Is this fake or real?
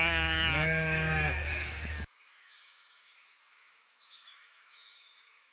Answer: fake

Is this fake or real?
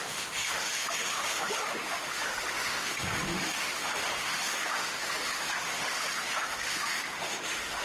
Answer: fake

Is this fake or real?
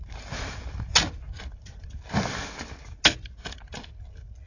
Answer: real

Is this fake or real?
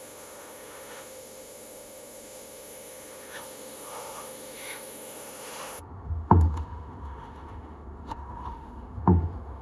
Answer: fake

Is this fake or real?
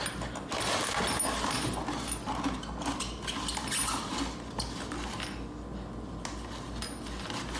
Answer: real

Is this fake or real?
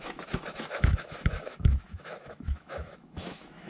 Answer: fake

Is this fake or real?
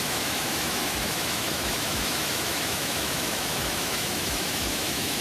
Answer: fake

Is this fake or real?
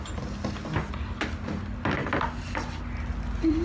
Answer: real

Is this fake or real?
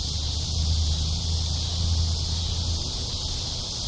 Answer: real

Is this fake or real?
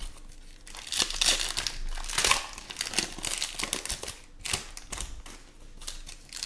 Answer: real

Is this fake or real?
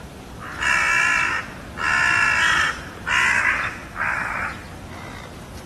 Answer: real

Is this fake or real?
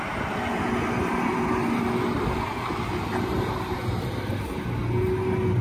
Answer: real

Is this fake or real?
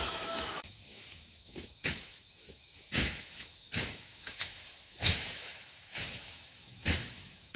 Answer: fake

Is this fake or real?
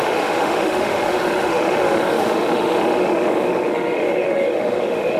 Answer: fake